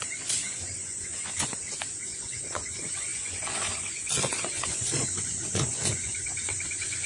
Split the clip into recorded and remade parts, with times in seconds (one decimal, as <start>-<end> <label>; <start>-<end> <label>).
0.0-7.1 remade